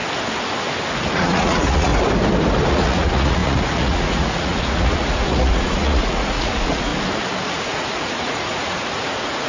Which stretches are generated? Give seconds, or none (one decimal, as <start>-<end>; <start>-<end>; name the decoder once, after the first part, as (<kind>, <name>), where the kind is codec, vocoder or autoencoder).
1.1-1.9 (vocoder, Vocos); 2.7-6.9; 7.5-9.5